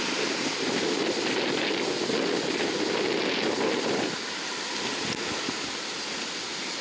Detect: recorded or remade recorded